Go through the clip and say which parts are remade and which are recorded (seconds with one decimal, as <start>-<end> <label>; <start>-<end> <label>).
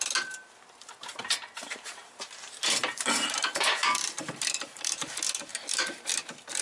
0.0-1.1 recorded; 1.1-5.1 remade; 5.1-5.5 recorded; 5.5-6.1 remade; 6.1-6.6 recorded